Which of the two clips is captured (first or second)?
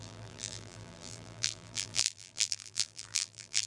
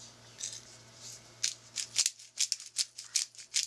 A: second